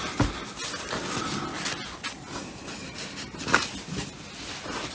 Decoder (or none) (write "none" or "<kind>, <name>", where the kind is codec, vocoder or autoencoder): none